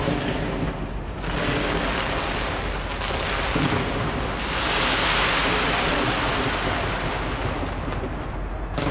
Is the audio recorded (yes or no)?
yes